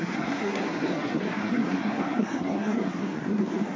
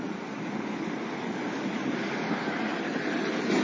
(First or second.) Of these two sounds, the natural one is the second